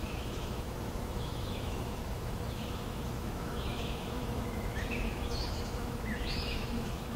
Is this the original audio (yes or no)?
no